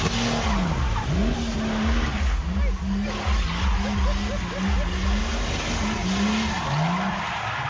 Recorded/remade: recorded